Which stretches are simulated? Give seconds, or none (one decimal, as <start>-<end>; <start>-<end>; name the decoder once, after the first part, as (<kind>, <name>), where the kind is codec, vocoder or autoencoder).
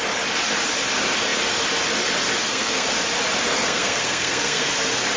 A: 2.5-3.0 (codec, SNAC); 3.5-4.7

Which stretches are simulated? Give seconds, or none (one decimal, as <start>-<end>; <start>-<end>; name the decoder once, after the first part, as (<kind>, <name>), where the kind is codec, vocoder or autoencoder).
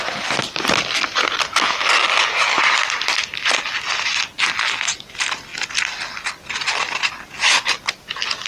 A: none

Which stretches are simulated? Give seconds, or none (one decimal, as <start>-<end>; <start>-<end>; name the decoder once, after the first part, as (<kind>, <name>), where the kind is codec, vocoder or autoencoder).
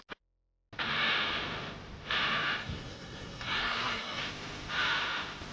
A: 2.6-4.2 (codec, SNAC)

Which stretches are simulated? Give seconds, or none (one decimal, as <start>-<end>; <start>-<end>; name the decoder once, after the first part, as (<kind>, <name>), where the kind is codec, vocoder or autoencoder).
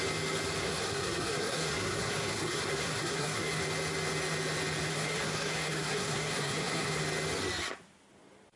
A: 0.6-3.6 (codec, SNAC); 4.9-7.0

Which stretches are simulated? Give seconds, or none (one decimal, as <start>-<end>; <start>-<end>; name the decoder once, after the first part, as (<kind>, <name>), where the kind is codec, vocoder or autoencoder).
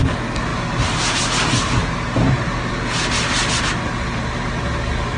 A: none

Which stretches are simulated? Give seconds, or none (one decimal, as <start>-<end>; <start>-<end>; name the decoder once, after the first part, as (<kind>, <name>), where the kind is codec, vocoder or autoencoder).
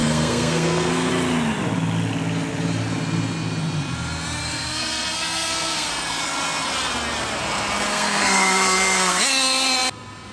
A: 0.0-1.1 (codec, SNAC); 4.4-5.9; 7.9-9.2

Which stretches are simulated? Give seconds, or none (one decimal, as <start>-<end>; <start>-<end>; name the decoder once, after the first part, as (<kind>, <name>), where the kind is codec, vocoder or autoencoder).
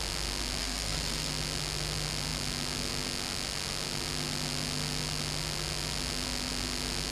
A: 0.6-1.3 (codec, SNAC)